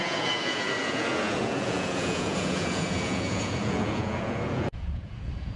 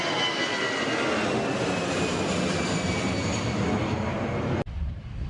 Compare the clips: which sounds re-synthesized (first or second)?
first